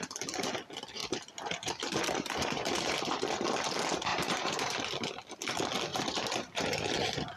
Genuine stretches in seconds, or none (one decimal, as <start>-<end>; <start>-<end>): 0.0-1.0; 3.2-4.1; 4.8-5.9; 6.7-7.4